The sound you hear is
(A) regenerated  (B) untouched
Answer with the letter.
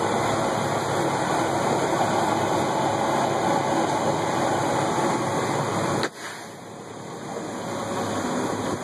B